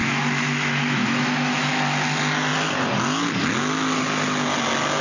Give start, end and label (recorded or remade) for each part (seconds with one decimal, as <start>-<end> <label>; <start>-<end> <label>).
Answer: 0.0-1.7 remade; 1.7-5.0 recorded

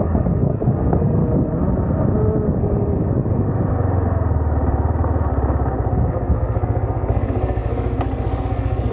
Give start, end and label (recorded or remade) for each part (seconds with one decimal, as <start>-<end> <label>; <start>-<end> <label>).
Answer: 0.0-1.2 remade; 1.2-6.1 recorded; 6.1-8.9 remade

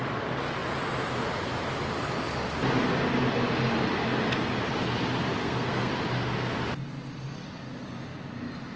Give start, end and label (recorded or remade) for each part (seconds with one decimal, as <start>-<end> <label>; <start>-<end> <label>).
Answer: 0.0-5.4 recorded; 5.4-5.9 remade; 5.9-8.8 recorded

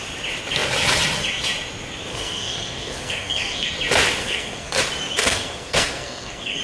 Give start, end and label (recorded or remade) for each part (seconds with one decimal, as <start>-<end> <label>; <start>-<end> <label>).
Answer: 0.0-2.1 recorded; 2.1-3.7 remade; 3.7-4.2 recorded; 4.2-4.8 remade; 4.8-5.2 recorded; 5.2-6.6 remade

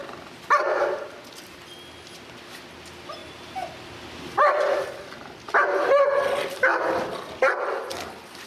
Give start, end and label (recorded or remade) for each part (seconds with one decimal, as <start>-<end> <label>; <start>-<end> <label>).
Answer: 0.0-8.5 recorded

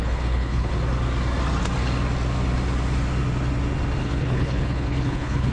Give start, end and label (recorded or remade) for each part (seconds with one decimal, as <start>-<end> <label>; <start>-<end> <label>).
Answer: 0.0-0.7 remade; 0.7-4.0 recorded; 4.0-5.5 remade

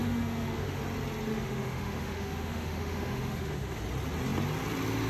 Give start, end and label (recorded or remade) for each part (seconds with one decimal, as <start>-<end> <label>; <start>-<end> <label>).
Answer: 0.0-0.8 remade; 0.8-1.3 recorded; 1.3-3.8 remade; 3.8-5.1 recorded

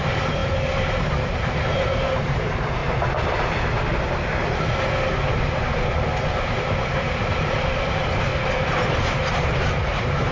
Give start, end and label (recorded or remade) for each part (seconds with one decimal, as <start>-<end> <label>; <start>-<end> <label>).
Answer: 0.0-2.8 remade; 2.8-7.5 recorded; 7.5-8.3 remade; 8.3-9.5 recorded; 9.5-10.3 remade